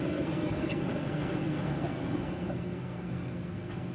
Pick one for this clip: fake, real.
fake